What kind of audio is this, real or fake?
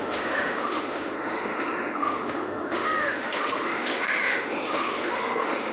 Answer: fake